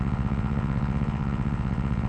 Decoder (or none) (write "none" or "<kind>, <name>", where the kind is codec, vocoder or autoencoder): vocoder, WaveNeXt